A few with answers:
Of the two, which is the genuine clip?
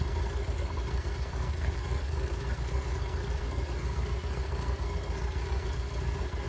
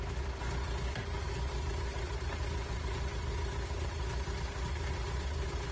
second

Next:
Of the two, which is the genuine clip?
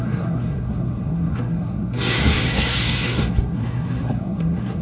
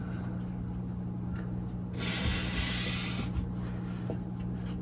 second